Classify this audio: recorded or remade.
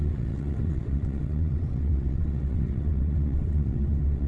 remade